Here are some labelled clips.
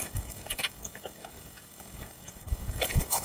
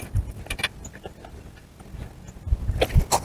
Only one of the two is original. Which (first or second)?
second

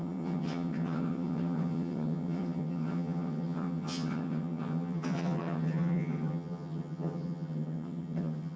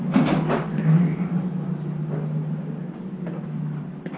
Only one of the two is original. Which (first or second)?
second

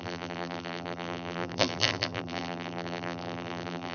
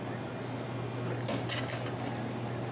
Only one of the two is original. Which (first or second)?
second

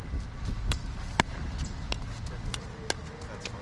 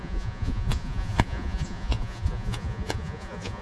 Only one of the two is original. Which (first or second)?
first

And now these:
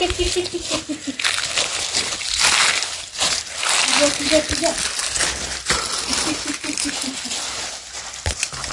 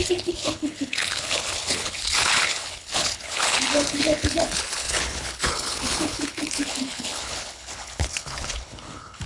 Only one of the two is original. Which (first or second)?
first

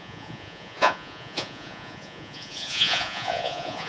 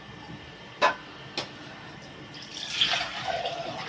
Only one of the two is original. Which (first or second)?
second